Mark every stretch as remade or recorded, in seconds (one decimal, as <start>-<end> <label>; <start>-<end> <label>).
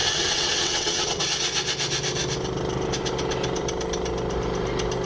0.0-1.2 remade; 1.2-5.1 recorded